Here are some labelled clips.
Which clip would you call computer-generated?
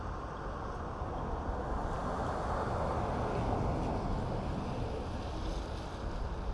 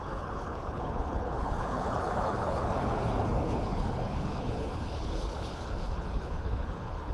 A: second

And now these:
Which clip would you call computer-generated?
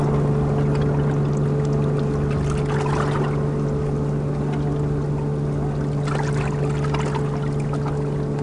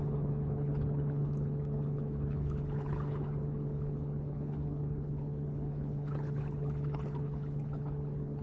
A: second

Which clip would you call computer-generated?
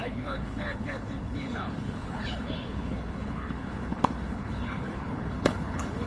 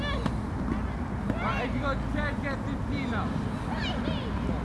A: first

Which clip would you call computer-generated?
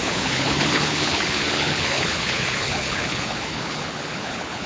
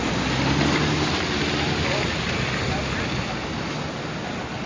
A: first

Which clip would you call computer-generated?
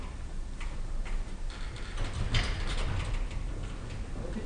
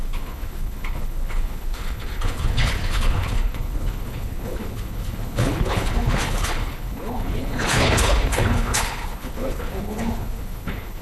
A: second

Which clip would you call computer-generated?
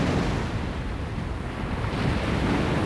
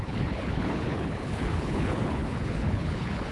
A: second